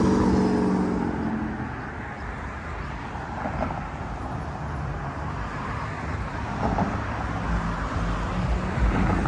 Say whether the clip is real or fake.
real